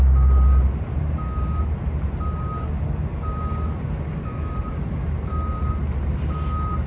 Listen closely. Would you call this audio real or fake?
real